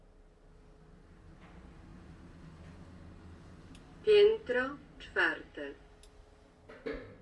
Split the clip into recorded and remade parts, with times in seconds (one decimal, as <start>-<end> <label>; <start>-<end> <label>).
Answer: 0.0-7.2 recorded